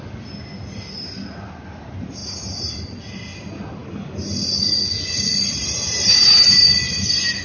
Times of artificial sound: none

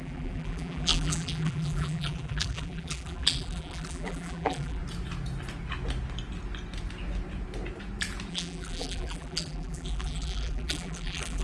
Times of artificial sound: 0.0-4.8; 8.3-11.4

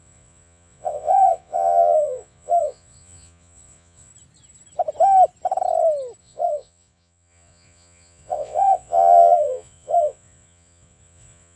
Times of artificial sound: 0.0-4.1; 6.2-11.6